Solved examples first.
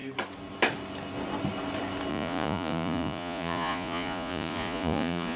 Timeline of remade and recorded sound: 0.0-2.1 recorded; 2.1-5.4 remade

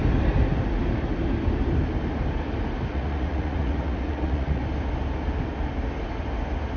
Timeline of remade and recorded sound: 0.0-2.9 recorded; 2.9-4.6 remade; 4.6-6.8 recorded

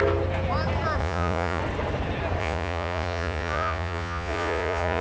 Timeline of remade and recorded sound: 0.0-1.0 recorded; 1.0-1.6 remade; 1.6-2.4 recorded; 2.4-5.0 remade

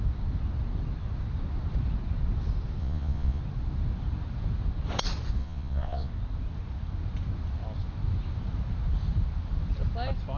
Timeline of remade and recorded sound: 0.0-2.8 recorded; 2.8-3.4 remade; 3.4-5.4 recorded; 5.4-6.1 remade; 6.1-10.4 recorded

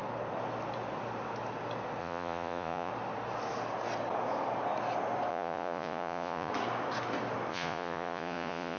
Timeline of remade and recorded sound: 0.0-2.0 recorded; 2.0-2.9 remade; 2.9-5.3 recorded; 5.3-6.5 remade; 6.5-7.5 recorded; 7.5-8.8 remade

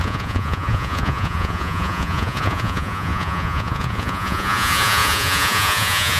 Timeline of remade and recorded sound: 0.0-6.2 remade

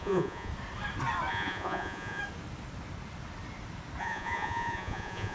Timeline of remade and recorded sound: 0.0-0.5 remade; 0.5-1.3 recorded; 1.3-2.2 remade; 2.2-4.0 recorded; 4.0-5.3 remade